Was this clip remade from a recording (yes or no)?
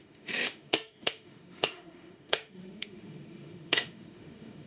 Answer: yes